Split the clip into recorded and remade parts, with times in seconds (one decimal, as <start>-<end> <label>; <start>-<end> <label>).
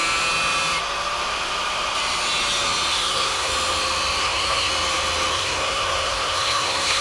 0.0-2.9 recorded; 2.9-3.5 remade; 3.5-4.2 recorded; 4.2-4.7 remade; 4.7-5.3 recorded; 5.3-7.0 remade